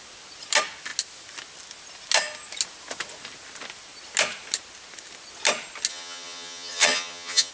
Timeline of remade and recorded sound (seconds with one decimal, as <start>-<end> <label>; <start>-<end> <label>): 0.0-5.9 recorded; 5.9-7.5 remade